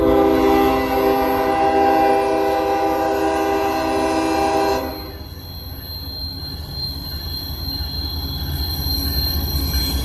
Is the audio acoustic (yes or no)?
yes